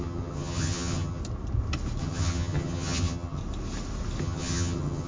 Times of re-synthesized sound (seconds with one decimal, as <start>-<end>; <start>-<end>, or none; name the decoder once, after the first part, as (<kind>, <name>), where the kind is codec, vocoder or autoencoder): 0.0-1.2 (vocoder, HiFi-GAN); 2.0-3.4; 4.2-5.1